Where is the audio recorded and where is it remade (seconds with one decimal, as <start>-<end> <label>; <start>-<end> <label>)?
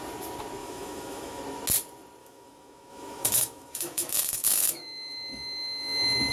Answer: 0.0-0.6 recorded; 0.6-1.4 remade; 1.4-2.2 recorded; 2.2-6.3 remade